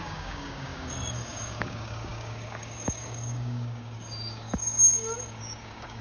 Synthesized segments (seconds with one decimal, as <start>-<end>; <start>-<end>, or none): 0.0-6.0